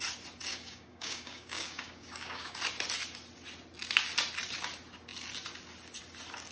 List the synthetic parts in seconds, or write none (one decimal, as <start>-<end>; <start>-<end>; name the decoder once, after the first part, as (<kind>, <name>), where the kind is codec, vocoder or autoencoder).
0.5-2.6 (codec, DAC)